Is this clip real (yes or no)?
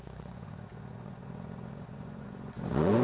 no